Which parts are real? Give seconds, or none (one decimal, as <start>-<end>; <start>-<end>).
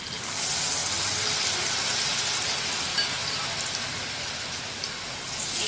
0.0-2.9; 5.1-5.7